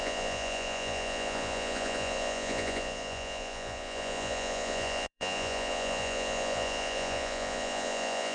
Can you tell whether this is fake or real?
fake